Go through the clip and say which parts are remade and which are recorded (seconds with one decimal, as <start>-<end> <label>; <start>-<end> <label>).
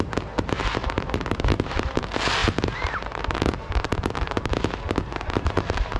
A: 0.0-0.8 recorded; 0.8-2.0 remade; 2.0-2.4 recorded; 2.4-4.5 remade; 4.5-5.0 recorded; 5.0-6.0 remade